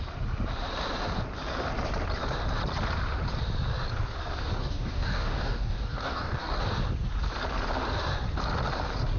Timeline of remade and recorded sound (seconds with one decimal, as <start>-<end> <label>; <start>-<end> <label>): 0.0-4.6 recorded; 4.6-6.6 remade; 6.6-9.2 recorded